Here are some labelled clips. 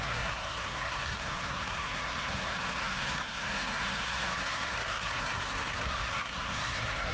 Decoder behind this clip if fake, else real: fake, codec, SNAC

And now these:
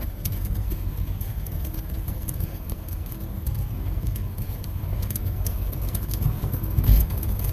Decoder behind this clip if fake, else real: fake, codec, SNAC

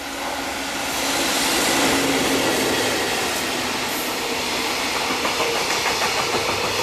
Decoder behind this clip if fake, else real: real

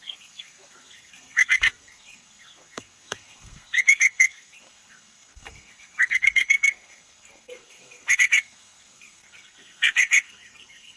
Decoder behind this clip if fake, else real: fake, codec, SNAC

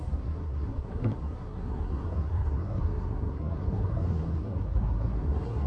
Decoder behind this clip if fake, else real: fake, codec, SNAC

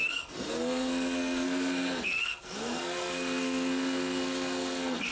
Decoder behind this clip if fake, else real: fake, codec, SNAC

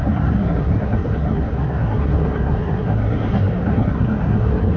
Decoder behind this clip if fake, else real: fake, codec, SNAC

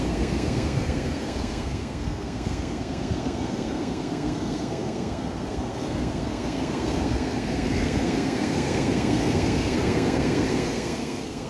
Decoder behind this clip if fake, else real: fake, codec, SNAC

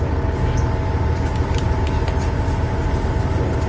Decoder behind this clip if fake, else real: real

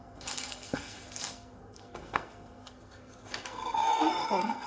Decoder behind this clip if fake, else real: fake, codec, SNAC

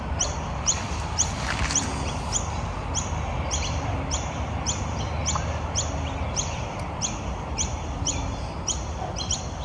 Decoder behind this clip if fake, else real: real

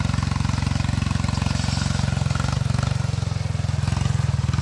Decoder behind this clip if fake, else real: real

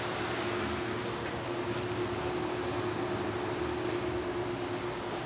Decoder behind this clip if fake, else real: real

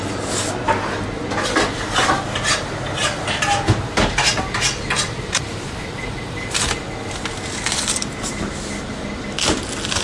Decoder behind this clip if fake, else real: real